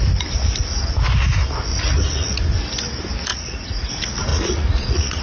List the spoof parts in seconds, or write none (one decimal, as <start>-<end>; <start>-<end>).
1.7-2.4; 3.3-3.9; 4.3-5.2